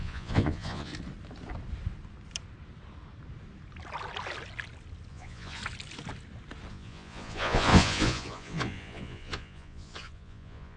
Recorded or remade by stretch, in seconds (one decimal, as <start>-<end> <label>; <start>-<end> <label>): 0.0-0.9 remade; 0.9-5.1 recorded; 5.1-5.6 remade; 5.6-6.7 recorded; 6.7-10.8 remade